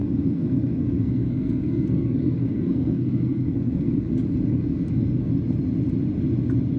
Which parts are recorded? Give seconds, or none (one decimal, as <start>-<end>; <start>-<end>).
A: 4.1-4.5; 5.3-6.8